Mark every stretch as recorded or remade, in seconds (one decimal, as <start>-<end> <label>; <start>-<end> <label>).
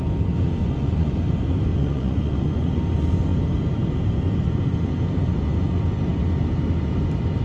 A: 0.0-0.6 recorded; 0.6-1.2 remade; 1.2-1.7 recorded; 1.7-2.8 remade; 2.8-7.4 recorded